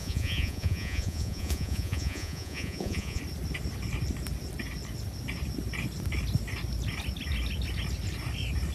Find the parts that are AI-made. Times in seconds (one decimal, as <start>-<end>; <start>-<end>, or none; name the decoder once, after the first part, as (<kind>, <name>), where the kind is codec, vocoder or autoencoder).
0.0-3.2 (vocoder, Vocos)